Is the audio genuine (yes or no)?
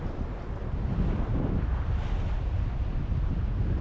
yes